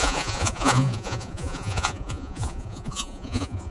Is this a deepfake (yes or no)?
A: yes